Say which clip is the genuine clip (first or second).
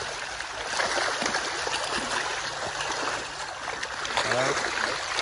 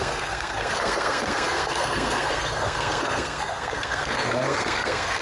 first